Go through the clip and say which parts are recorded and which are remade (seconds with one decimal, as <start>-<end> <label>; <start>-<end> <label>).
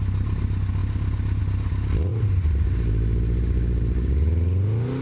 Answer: 0.0-5.0 recorded